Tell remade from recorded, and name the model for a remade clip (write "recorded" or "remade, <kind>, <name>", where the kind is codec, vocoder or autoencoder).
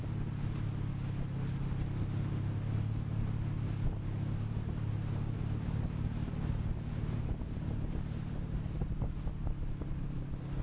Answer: recorded